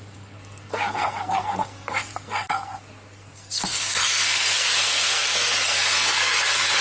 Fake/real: fake